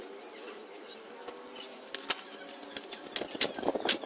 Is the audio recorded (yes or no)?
yes